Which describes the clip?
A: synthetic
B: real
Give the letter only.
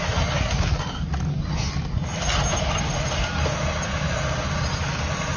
B